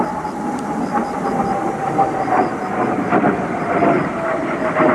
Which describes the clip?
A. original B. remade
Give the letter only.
A